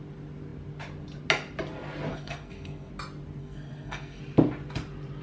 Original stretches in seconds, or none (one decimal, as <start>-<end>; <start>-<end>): 0.0-2.1; 2.9-3.4; 4.2-5.2